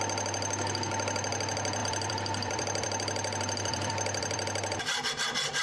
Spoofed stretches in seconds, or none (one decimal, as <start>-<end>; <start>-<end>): 1.8-5.1